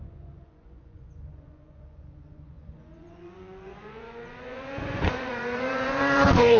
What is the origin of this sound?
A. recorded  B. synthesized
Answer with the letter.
B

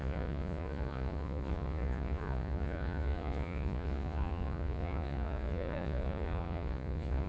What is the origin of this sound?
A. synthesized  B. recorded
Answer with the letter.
A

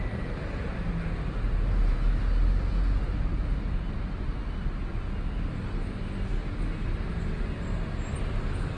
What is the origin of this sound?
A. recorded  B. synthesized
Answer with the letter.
A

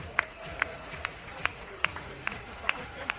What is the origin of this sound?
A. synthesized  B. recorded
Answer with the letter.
A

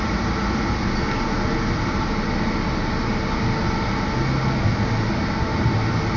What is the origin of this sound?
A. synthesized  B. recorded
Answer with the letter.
B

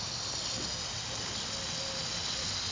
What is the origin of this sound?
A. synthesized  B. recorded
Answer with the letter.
B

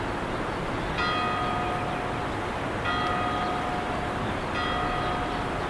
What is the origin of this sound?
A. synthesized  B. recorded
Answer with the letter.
B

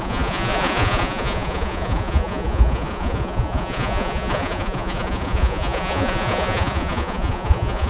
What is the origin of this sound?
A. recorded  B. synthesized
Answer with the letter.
B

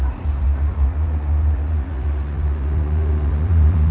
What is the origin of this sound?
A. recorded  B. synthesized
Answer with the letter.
B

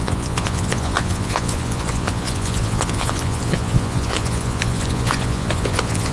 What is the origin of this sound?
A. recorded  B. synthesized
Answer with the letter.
B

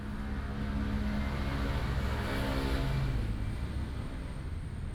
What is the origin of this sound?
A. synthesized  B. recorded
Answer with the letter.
B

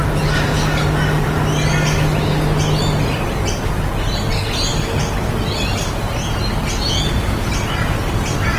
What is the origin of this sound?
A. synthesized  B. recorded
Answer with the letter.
B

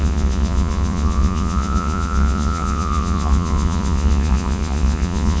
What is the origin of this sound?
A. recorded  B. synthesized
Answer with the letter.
B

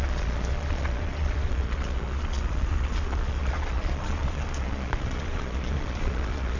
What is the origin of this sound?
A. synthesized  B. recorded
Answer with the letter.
A